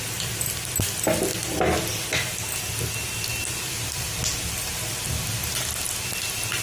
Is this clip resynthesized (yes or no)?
no